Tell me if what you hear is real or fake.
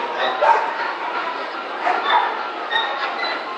real